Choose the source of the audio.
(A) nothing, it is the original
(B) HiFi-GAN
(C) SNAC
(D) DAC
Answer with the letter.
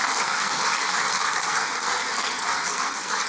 C